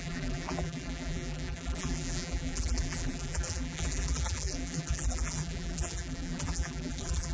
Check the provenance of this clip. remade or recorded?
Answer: remade